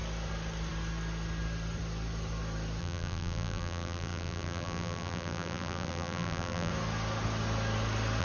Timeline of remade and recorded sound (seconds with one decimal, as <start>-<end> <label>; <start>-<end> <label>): 0.0-2.8 recorded; 2.8-6.7 remade; 6.7-8.2 recorded